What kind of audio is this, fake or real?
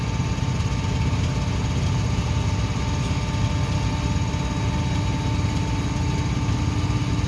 real